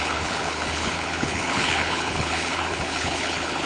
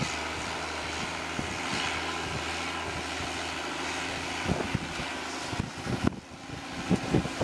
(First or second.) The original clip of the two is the second